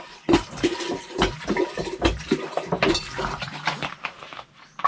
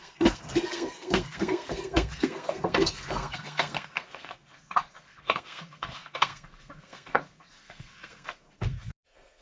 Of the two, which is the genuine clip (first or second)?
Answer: first